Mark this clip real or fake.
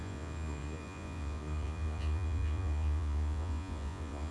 fake